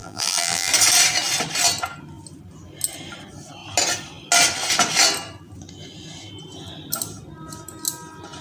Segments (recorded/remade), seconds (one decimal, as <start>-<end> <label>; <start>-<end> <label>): 0.0-0.7 remade; 0.7-8.4 recorded